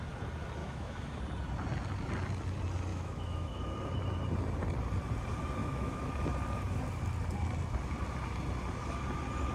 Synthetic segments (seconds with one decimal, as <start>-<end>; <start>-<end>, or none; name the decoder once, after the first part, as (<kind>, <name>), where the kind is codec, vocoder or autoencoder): 0.6-1.2 (autoencoder, DAC-VAE); 2.9-3.6; 5.6-6.1